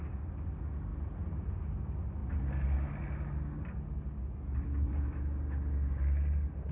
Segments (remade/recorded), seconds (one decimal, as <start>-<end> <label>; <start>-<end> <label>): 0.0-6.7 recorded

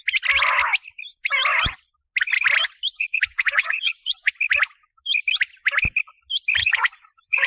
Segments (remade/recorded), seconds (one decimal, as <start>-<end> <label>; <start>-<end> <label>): 0.0-2.9 recorded; 2.9-4.3 remade; 4.3-6.6 recorded; 6.6-7.5 remade

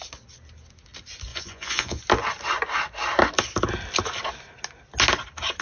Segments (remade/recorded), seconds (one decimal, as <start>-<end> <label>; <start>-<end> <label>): 0.0-1.3 recorded; 1.3-2.0 remade; 2.0-5.6 recorded

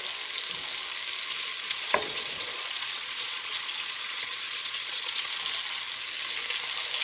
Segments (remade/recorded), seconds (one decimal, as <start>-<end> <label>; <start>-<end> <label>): 0.0-1.3 recorded; 1.3-5.3 remade; 5.3-7.0 recorded

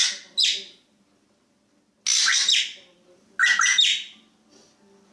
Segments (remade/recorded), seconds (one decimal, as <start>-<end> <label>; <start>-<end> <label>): 0.0-5.1 recorded

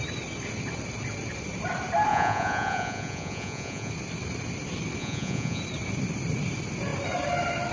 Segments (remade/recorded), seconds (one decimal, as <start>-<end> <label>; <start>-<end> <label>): 0.0-2.1 recorded; 2.1-3.9 remade; 3.9-5.0 recorded; 5.0-5.6 remade; 5.6-7.7 recorded